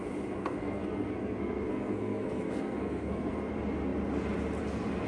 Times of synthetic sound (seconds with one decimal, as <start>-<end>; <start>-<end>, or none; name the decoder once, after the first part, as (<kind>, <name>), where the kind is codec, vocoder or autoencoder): 0.4-3.5 (codec, SNAC)